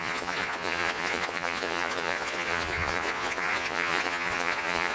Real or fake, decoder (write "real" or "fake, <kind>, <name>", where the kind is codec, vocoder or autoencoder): fake, vocoder, Vocos